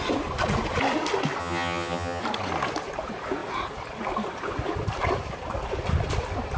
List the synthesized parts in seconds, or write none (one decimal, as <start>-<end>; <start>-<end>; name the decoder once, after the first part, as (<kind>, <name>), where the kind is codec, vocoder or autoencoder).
1.4-2.2 (vocoder, HiFi-GAN)